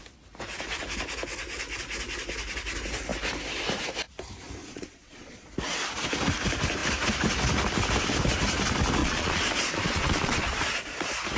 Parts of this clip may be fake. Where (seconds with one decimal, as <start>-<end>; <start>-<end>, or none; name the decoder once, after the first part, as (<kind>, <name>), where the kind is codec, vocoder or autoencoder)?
4.6-5.5 (vocoder, Vocos); 9.0-10.9